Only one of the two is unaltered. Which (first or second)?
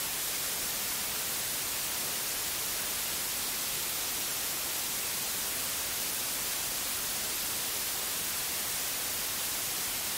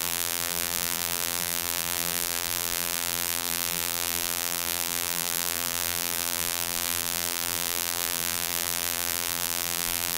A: first